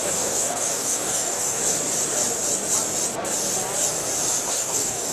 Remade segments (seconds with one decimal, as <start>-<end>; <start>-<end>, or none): 0.0-1.6; 4.5-5.1